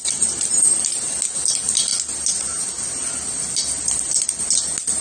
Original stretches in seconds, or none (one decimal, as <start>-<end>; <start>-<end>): 0.0-5.0